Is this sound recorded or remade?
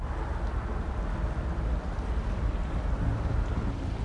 recorded